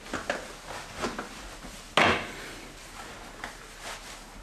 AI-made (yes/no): no